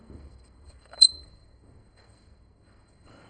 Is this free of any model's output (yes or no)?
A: no